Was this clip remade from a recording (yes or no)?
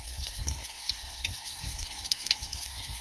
yes